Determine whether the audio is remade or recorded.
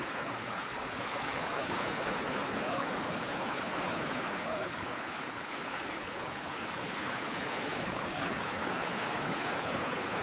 remade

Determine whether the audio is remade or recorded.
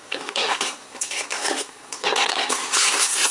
remade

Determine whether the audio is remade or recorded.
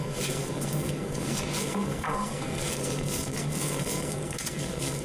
remade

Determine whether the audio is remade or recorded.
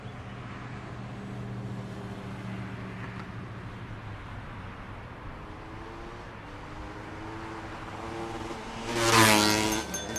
recorded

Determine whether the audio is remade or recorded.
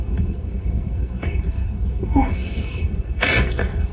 remade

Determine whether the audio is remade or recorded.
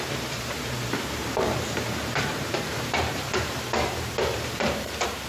remade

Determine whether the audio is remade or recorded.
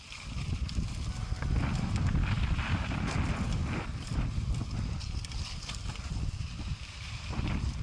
recorded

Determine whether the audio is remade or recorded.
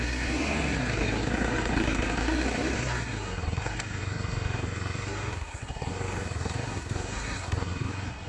remade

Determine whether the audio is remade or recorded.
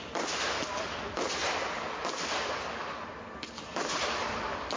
recorded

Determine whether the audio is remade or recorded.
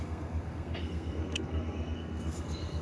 remade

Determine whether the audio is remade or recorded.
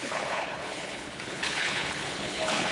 remade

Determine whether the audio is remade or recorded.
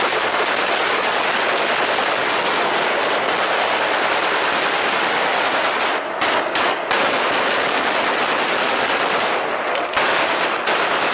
recorded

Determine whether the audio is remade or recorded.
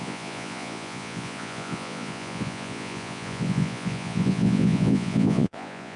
remade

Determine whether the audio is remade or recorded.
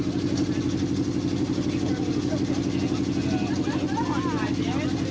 recorded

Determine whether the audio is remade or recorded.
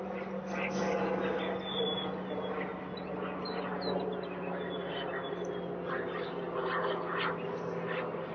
recorded